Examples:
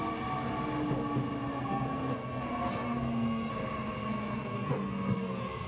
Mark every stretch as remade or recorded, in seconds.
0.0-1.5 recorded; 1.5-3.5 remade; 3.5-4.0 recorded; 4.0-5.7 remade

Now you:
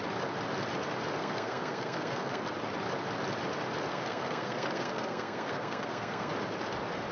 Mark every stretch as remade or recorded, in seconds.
0.0-1.2 recorded; 1.2-2.4 remade; 2.4-3.9 recorded; 3.9-6.3 remade; 6.3-7.1 recorded

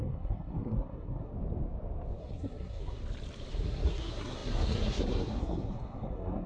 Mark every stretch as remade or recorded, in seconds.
0.0-1.3 remade; 1.3-2.2 recorded; 2.2-3.0 remade; 3.0-3.5 recorded; 3.5-6.5 remade

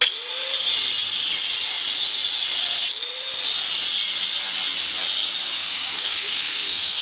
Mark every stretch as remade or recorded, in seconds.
0.0-5.6 recorded; 5.6-7.0 remade